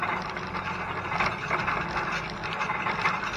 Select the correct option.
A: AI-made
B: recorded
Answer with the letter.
B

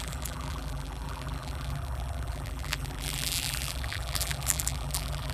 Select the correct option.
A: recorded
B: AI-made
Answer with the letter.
B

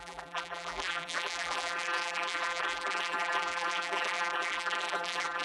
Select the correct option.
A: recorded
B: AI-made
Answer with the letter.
B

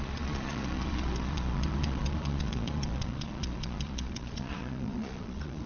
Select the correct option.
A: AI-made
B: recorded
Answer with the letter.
A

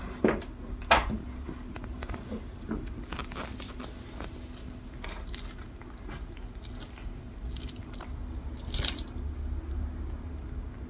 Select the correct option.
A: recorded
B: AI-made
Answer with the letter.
A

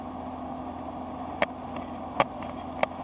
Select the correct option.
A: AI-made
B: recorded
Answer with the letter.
B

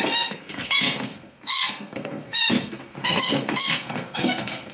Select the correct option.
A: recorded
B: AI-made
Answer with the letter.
B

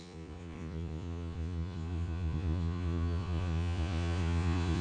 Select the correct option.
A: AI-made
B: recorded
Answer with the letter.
A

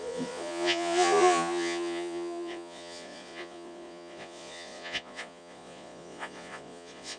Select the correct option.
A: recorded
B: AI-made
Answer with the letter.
B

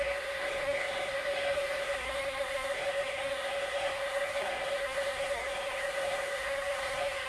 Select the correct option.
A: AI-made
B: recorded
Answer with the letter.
A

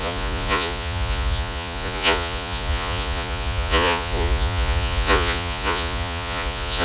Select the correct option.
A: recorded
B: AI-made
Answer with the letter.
B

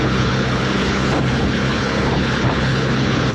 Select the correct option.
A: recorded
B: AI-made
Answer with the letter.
B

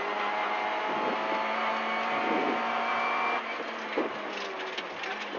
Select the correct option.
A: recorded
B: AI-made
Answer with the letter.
A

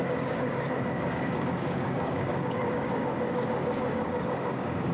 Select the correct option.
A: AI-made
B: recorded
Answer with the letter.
A